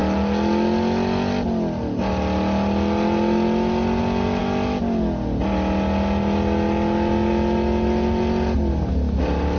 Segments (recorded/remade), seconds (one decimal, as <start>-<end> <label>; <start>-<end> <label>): 0.0-9.6 recorded